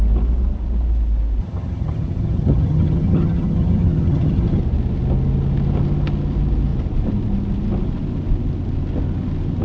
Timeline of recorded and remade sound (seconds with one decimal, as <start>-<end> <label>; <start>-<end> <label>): 0.0-1.4 recorded; 1.4-4.6 remade; 4.6-9.6 recorded